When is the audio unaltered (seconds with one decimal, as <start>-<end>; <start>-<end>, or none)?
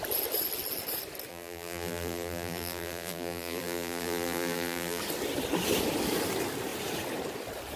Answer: 0.0-1.3; 5.0-7.8